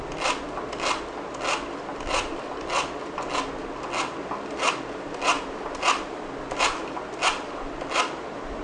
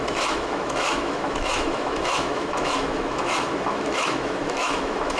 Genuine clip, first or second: first